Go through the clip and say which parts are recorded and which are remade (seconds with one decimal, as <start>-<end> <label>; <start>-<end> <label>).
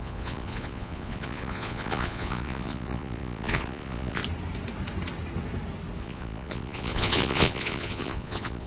0.0-4.2 remade; 4.2-6.0 recorded; 6.0-8.7 remade